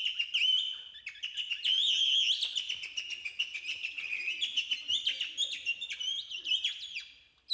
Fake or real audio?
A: real